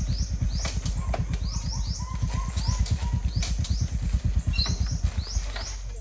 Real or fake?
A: real